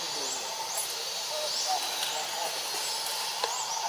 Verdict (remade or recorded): recorded